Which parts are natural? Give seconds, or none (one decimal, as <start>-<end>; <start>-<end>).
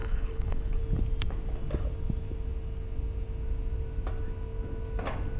0.8-5.4